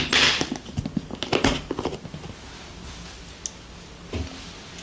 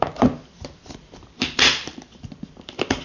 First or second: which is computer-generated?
second